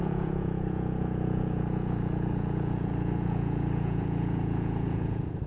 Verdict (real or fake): fake